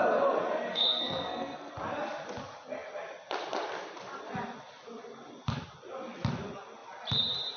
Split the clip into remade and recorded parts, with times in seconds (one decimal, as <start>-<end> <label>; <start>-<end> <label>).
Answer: 0.0-0.7 recorded; 0.7-1.7 remade; 1.7-7.6 recorded